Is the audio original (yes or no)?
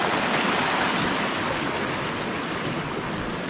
yes